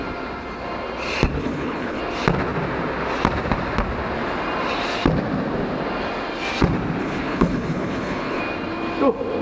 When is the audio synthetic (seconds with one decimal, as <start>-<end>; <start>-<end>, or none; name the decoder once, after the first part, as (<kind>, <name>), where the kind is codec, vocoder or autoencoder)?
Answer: 1.4-2.0 (codec, HILCodec); 7.0-8.4